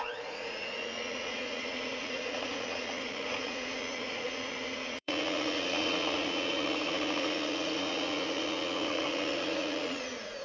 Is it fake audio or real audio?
fake